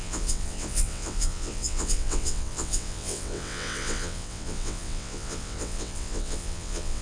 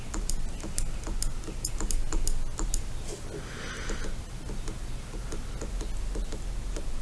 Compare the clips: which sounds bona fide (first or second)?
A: second